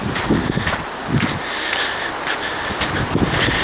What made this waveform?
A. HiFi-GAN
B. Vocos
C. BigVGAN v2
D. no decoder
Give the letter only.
D